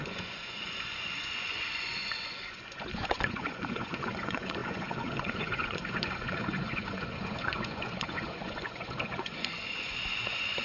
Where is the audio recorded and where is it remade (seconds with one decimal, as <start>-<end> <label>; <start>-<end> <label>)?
0.0-10.6 remade